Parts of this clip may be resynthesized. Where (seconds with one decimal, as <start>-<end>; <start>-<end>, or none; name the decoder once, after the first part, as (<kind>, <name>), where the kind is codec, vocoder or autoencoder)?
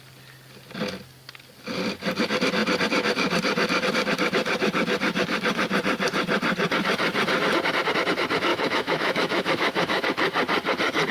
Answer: 8.5-10.0 (autoencoder, DAC-VAE)